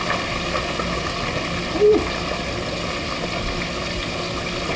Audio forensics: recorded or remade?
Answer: recorded